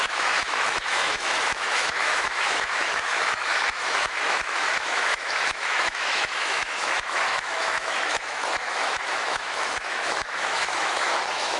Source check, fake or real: fake